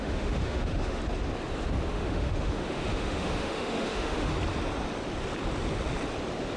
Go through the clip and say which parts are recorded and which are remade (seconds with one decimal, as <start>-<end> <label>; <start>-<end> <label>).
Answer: 0.0-1.0 remade; 1.0-1.9 recorded; 1.9-4.3 remade; 4.3-6.6 recorded